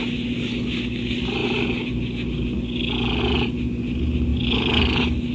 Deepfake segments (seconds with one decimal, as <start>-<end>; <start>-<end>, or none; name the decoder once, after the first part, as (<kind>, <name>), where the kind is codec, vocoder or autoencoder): none